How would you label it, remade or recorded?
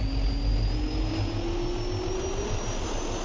recorded